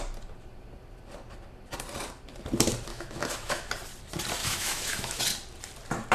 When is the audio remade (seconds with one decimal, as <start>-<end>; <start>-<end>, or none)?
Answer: 2.9-3.7; 4.4-5.2